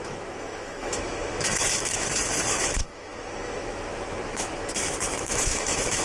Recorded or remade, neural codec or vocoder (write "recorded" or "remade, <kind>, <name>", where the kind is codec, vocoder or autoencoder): remade, autoencoder, DAC-VAE